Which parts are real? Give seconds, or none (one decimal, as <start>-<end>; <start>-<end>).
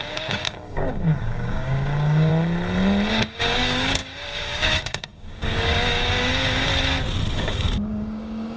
2.3-3.1; 6.7-7.3